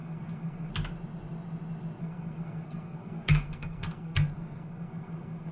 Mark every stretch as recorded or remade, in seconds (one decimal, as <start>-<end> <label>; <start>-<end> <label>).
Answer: 0.0-0.7 remade; 0.7-2.0 recorded; 2.0-5.5 remade